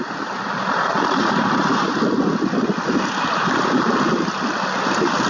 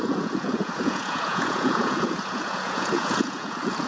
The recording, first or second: first